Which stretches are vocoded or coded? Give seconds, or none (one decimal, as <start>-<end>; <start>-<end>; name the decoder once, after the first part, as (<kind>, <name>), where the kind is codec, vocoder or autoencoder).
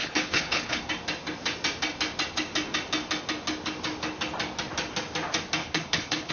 0.0-0.8 (codec, HILCodec); 5.6-6.3